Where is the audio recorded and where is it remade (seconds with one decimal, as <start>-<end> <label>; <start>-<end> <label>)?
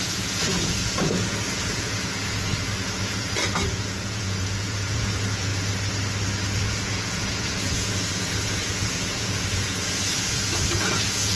0.0-5.5 remade; 5.5-6.7 recorded; 6.7-11.4 remade